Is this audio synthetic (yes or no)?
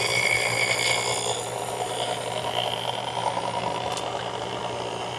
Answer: no